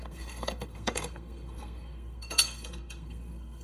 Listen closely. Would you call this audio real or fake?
fake